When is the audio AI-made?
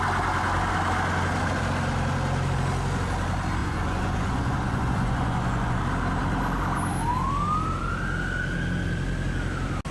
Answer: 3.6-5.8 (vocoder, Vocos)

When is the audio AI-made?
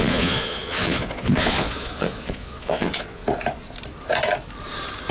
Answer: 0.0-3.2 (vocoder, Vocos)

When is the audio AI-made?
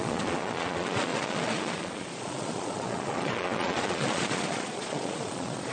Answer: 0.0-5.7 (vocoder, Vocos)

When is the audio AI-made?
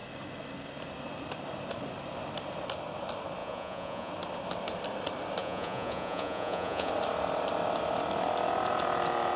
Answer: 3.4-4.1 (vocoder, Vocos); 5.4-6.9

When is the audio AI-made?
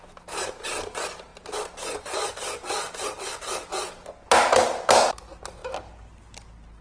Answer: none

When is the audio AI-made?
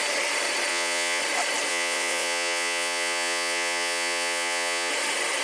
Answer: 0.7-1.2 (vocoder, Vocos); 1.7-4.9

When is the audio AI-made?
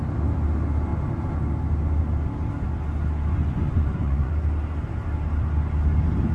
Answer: 3.4-4.3 (vocoder, Vocos)